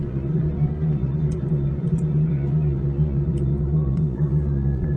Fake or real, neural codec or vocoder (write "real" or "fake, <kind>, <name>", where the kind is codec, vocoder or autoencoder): fake, vocoder, Vocos